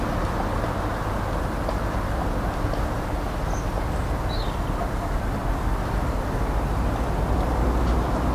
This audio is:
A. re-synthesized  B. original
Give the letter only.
B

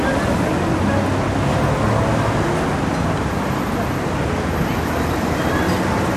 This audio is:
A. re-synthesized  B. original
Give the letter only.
B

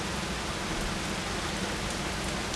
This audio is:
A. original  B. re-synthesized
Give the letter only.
A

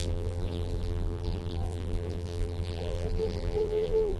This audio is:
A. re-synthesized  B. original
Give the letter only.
A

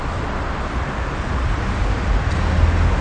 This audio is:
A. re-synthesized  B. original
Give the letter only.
B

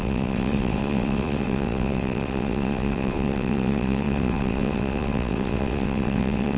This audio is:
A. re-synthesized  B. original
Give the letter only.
A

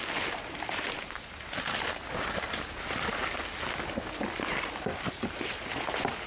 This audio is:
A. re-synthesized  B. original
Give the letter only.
B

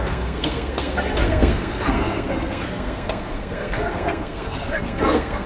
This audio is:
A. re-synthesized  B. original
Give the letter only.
A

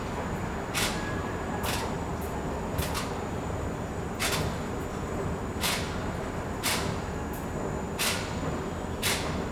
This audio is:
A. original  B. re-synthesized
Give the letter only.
A